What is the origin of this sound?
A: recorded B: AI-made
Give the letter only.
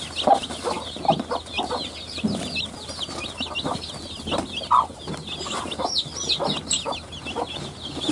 A